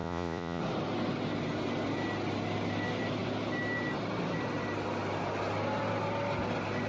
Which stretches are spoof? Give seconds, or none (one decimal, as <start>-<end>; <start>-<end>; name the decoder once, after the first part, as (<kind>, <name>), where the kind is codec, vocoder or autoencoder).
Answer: 0.0-0.6 (vocoder, Vocos)